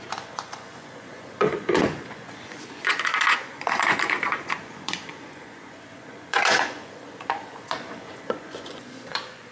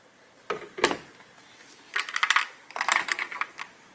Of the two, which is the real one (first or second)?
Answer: second